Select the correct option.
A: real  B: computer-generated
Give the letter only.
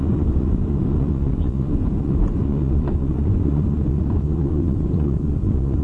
B